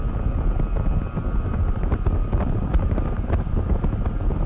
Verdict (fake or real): real